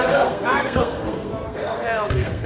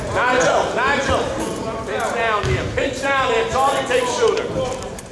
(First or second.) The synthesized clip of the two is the first